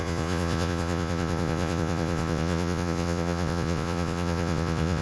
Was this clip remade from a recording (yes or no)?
yes